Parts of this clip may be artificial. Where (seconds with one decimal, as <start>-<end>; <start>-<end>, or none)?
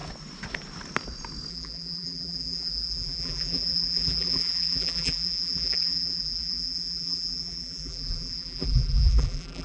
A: 1.5-9.6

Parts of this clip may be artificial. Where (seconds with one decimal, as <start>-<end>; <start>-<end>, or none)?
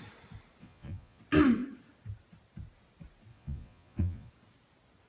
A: 0.6-1.2; 3.3-4.3